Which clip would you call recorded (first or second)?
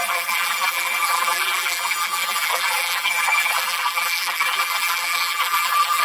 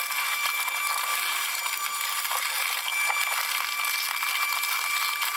second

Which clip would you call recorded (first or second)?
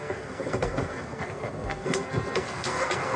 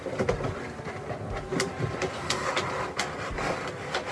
second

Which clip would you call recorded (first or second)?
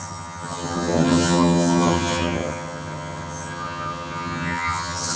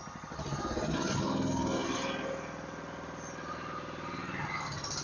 second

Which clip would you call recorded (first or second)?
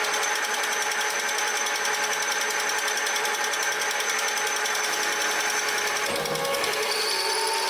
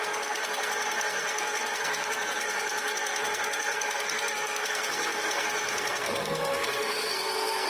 first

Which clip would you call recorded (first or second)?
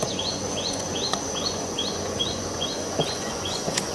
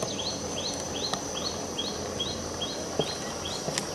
second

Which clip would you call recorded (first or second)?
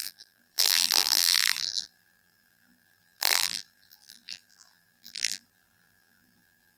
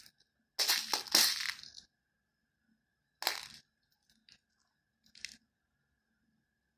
second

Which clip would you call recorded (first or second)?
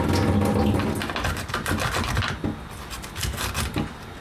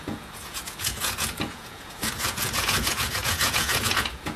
first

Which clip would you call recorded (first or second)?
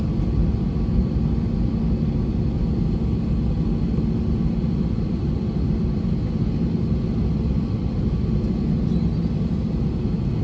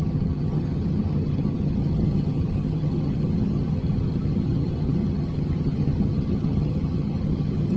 first